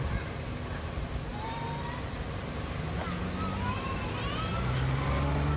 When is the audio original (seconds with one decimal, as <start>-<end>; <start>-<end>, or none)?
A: 0.0-5.6